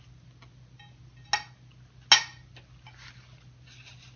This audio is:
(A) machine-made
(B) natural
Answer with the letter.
B